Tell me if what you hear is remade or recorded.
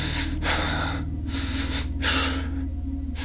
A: recorded